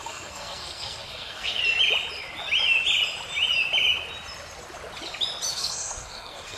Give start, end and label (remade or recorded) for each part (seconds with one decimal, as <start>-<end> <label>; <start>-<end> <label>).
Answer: 0.0-1.6 remade; 1.6-5.5 recorded; 5.5-6.6 remade